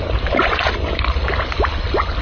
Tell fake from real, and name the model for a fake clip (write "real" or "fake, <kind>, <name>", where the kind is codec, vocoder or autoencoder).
real